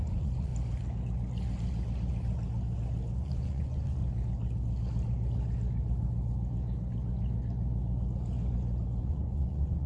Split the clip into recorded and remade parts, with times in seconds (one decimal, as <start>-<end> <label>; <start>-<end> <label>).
0.0-0.5 remade; 0.5-3.2 recorded; 3.2-4.0 remade; 4.0-9.0 recorded; 9.0-9.9 remade